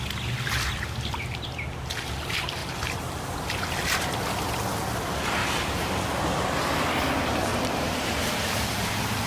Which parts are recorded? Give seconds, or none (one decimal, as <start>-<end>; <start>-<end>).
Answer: 0.0-2.6; 3.4-5.4; 6.1-7.5